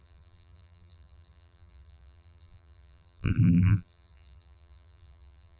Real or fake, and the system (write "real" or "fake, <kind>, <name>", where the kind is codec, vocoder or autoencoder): fake, vocoder, BigVGAN v2